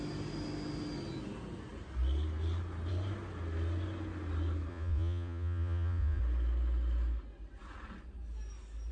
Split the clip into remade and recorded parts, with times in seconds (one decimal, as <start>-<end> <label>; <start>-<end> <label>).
0.0-4.7 recorded; 4.7-6.2 remade; 6.2-8.9 recorded